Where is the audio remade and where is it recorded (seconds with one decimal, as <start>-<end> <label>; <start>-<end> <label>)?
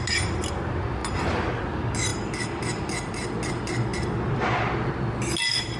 0.0-5.8 recorded